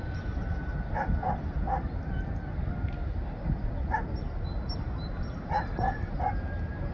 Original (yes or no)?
yes